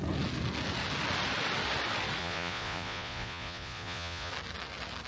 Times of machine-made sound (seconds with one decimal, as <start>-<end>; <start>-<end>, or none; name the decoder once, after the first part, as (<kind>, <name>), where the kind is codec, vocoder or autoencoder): 2.2-4.3 (vocoder, Vocos)